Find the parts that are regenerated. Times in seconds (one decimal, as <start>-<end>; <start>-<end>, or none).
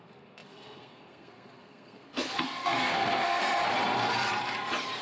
0.0-3.4